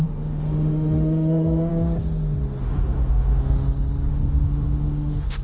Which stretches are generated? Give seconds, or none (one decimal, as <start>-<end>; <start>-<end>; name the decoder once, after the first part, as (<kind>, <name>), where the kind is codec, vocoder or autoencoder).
0.0-1.7 (autoencoder, DAC-VAE); 2.6-3.4; 4.1-5.4

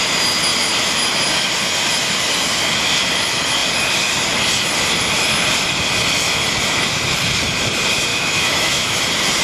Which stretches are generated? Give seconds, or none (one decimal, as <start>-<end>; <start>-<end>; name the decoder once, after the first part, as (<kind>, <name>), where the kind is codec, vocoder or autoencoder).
8.1-9.0 (autoencoder, DAC-VAE)

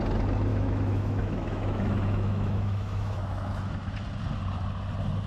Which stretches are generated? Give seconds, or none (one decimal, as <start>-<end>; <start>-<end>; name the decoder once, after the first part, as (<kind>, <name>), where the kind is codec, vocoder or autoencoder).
0.5-3.7 (autoencoder, DAC-VAE)